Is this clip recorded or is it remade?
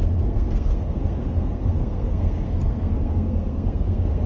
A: remade